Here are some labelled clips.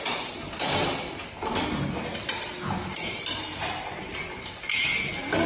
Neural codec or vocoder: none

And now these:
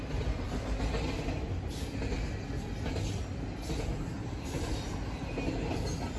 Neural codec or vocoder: none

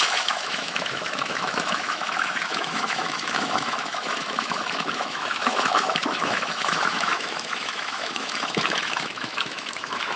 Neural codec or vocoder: autoencoder, DAC-VAE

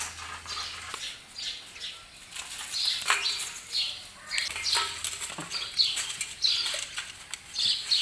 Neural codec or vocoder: none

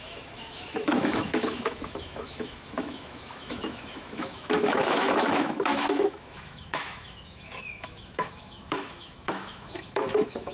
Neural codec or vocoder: autoencoder, DAC-VAE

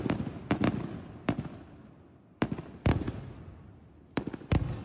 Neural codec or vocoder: none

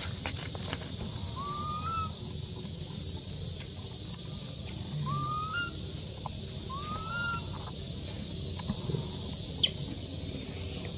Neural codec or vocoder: none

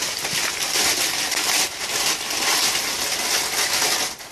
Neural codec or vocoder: none